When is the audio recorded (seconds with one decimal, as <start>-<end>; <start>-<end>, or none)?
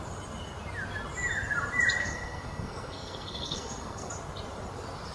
0.0-2.0; 4.1-5.1